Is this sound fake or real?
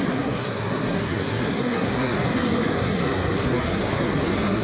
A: fake